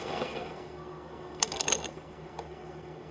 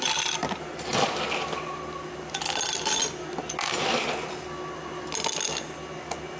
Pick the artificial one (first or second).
first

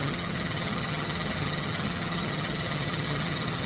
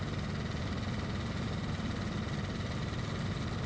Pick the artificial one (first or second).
first